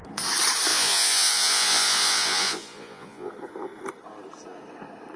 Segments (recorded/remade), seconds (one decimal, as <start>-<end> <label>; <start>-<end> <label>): 0.0-0.7 recorded; 0.7-3.3 remade; 3.3-5.2 recorded